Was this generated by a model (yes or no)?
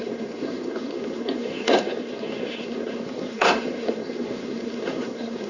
yes